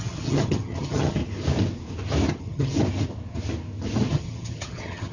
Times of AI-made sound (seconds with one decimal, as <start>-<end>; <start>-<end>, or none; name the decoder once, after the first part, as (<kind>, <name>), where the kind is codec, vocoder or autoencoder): 0.0-1.2 (vocoder, HiFi-GAN); 2.3-2.7; 4.1-5.1